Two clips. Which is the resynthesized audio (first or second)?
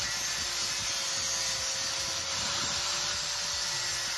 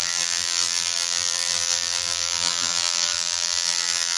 second